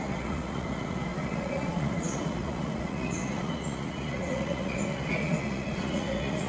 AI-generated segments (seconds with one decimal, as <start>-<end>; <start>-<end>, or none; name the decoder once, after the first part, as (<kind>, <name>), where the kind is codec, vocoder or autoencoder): 0.0-6.5 (vocoder, Vocos)